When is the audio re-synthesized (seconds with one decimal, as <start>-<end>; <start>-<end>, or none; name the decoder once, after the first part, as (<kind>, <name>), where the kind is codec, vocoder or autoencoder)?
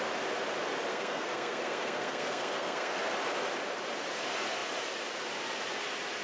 0.9-3.0 (codec, SNAC)